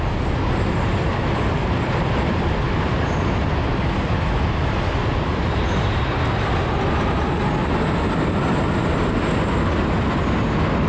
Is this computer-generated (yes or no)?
no